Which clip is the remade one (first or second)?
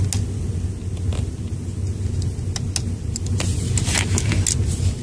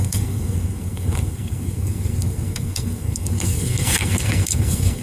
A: second